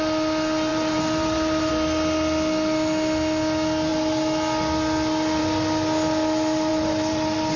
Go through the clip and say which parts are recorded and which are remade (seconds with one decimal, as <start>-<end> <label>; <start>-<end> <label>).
0.0-0.7 recorded; 0.7-1.7 remade; 1.7-6.7 recorded; 6.7-7.6 remade